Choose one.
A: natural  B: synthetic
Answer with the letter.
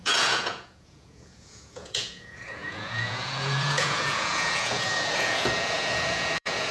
B